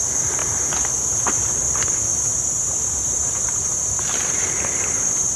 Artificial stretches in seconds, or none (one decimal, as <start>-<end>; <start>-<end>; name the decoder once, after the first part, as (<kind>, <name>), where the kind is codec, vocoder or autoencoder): 0.4-1.6 (vocoder, BigVGAN v2); 2.1-5.4